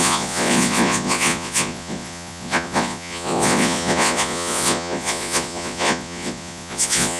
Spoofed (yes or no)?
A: yes